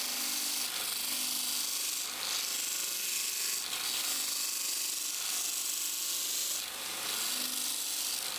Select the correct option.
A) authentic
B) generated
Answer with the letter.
A